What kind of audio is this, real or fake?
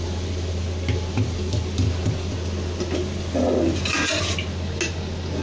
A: real